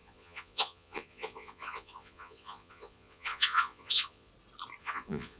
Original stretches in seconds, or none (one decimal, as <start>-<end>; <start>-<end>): 4.3-4.8